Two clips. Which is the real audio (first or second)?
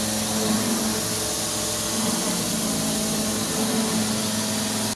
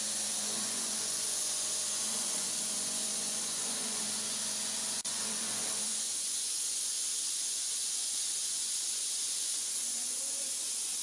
first